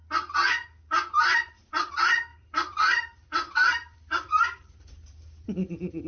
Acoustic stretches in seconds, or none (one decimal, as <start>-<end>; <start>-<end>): 0.0-1.3; 1.9-2.3